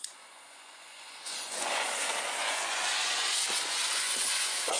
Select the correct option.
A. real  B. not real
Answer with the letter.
B